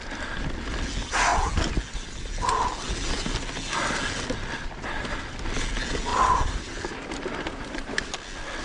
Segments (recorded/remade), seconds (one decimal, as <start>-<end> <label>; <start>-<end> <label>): 0.0-6.1 recorded; 6.1-8.0 remade; 8.0-8.6 recorded